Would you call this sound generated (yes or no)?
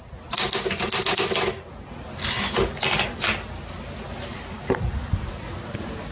no